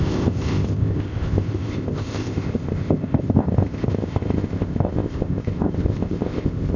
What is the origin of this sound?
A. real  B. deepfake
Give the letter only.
B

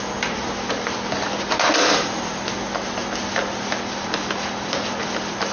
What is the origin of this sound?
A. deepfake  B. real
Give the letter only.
B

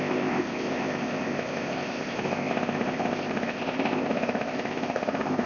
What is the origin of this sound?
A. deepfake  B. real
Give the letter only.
A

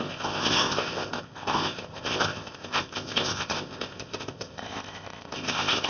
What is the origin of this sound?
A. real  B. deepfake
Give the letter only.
B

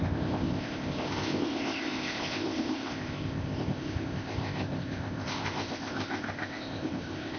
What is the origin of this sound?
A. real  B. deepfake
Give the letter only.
B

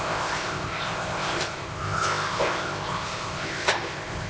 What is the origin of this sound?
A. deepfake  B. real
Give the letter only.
A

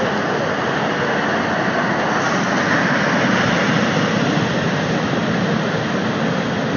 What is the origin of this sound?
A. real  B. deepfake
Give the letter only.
A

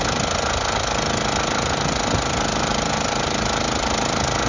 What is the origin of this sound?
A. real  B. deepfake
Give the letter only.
A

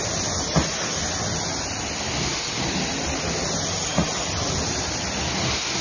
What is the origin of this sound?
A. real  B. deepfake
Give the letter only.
A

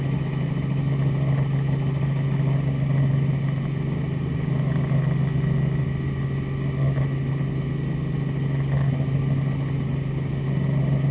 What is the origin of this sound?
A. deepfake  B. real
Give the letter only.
B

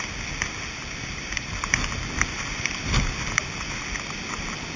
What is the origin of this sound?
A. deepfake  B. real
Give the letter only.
B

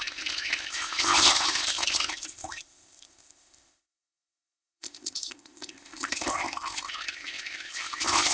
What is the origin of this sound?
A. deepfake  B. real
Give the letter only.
A